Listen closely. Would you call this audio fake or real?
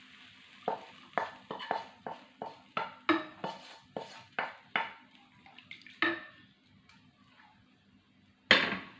real